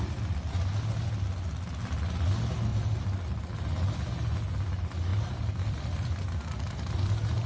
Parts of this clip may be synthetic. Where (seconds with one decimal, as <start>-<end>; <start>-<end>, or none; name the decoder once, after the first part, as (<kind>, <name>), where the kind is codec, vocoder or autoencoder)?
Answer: 2.7-3.5 (vocoder, BigVGAN v2); 5.1-6.2